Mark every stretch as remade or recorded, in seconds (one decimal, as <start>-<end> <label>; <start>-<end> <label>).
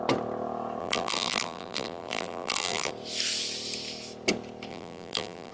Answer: 0.0-0.8 recorded; 0.8-2.9 remade; 2.9-4.7 recorded; 4.7-5.5 remade